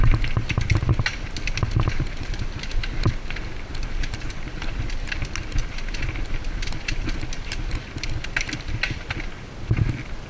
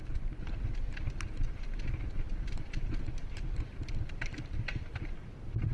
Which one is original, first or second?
first